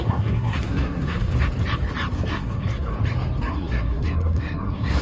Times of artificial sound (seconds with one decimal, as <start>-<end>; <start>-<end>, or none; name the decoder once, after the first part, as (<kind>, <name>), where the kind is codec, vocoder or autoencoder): 0.0-1.3 (codec, SNAC); 2.3-2.9; 3.5-5.0

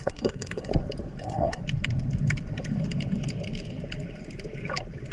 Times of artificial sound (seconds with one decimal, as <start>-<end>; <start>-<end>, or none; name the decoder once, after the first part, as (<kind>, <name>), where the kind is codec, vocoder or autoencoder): 0.0-0.7 (codec, SNAC); 1.2-1.6

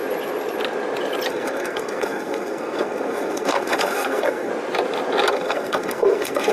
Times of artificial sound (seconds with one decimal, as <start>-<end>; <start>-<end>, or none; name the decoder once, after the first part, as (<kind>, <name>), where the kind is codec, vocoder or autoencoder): 1.3-4.5 (codec, SNAC); 5.3-6.5

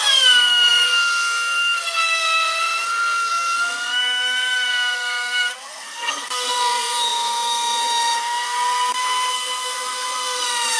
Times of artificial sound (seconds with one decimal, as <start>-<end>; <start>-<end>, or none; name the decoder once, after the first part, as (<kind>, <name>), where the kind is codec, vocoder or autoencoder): 0.0-10.8 (codec, SNAC)

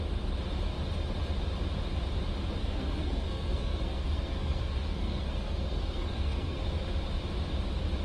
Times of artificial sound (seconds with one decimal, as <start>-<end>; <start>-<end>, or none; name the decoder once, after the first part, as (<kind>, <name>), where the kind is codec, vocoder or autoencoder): 2.6-6.6 (codec, SNAC)

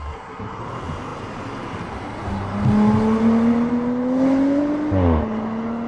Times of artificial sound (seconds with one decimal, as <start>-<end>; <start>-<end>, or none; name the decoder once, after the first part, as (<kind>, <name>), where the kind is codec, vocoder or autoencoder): 0.0-0.6 (codec, SNAC)

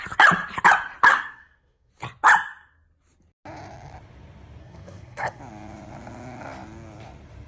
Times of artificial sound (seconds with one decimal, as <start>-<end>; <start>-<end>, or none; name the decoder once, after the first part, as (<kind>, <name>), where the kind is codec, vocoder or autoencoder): 1.1-1.9 (codec, SNAC); 4.6-5.4

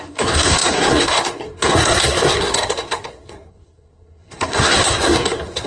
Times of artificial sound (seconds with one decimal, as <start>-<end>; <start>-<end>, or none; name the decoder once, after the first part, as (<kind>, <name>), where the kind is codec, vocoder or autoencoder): 0.0-5.7 (codec, SNAC)